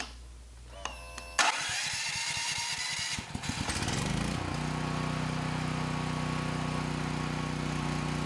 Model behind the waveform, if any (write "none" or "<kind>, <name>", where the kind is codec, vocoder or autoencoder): none